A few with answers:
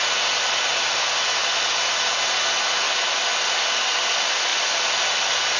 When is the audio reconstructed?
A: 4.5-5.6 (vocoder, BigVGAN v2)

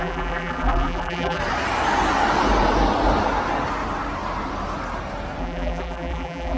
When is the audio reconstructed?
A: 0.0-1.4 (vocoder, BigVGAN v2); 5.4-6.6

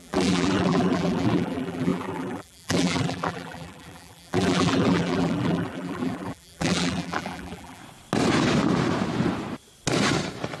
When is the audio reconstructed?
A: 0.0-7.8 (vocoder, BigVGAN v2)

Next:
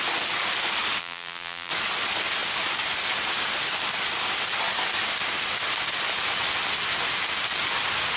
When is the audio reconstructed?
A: 1.0-1.7 (vocoder, BigVGAN v2)

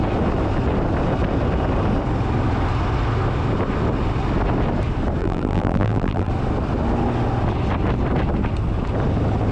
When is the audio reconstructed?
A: 5.2-6.3 (vocoder, BigVGAN v2)

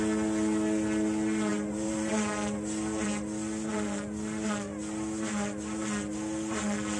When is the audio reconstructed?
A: 1.5-2.1 (vocoder, BigVGAN v2)

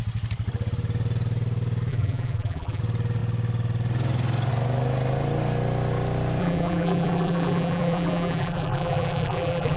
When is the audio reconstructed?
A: 1.9-2.8 (vocoder, BigVGAN v2); 6.4-9.8

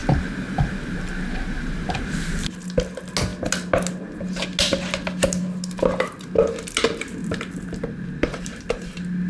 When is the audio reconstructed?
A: 7.2-8.6 (vocoder, BigVGAN v2)